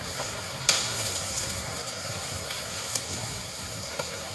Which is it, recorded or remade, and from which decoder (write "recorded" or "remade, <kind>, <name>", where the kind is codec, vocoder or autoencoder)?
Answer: remade, codec, SNAC